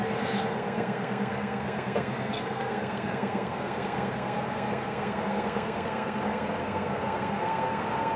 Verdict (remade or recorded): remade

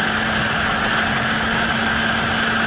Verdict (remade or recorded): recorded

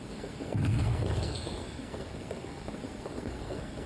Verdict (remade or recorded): remade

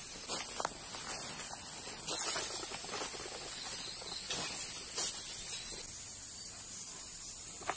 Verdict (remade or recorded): recorded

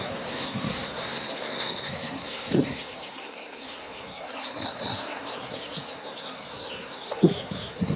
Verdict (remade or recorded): remade